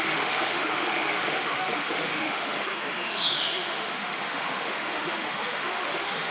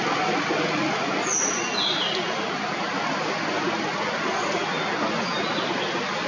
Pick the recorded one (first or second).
second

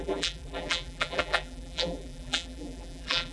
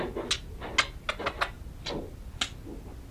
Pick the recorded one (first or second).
second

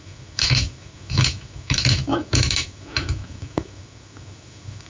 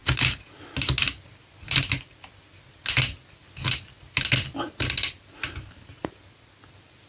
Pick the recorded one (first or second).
second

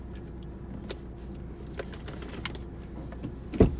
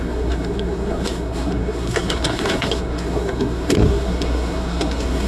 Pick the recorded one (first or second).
first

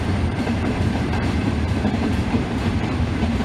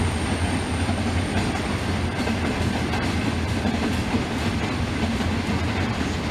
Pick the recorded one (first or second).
second